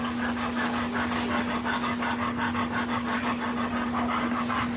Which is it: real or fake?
real